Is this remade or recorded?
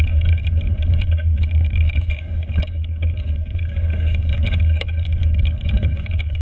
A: remade